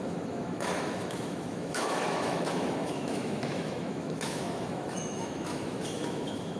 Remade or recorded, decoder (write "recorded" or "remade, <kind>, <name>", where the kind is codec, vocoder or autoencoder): remade, autoencoder, DAC-VAE